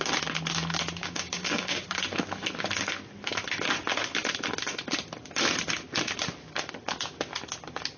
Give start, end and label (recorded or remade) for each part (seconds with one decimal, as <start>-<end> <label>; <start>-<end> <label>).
0.0-1.0 recorded; 1.0-2.0 remade; 2.0-8.0 recorded